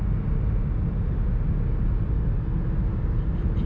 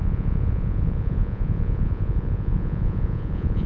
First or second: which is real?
first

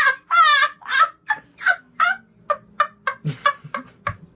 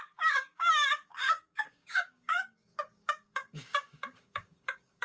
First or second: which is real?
first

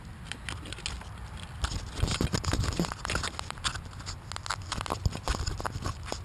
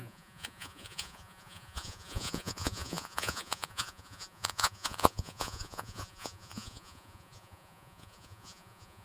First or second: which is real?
first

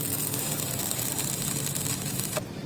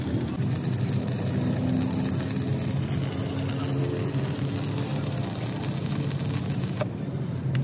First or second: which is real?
second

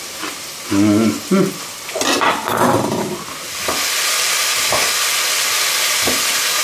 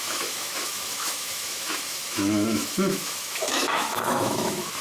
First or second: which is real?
first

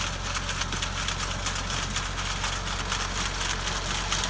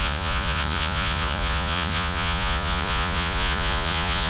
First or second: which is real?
first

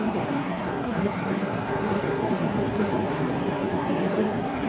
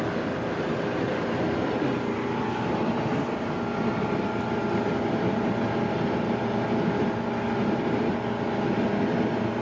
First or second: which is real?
second